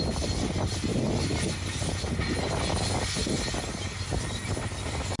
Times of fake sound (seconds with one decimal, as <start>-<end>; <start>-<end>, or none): none

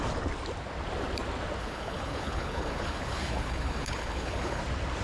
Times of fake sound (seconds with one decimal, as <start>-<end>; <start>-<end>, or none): 1.6-4.6

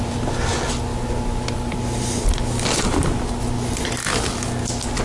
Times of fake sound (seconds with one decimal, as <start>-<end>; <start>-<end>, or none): none